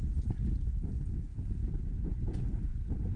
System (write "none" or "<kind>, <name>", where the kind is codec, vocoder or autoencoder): none